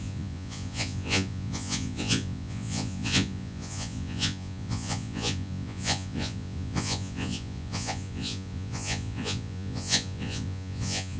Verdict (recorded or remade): remade